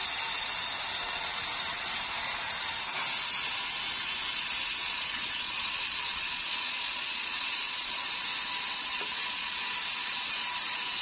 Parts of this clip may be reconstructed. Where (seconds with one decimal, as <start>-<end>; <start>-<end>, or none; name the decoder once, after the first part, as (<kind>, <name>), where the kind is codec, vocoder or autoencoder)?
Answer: 4.8-8.1 (vocoder, Vocos); 8.9-9.6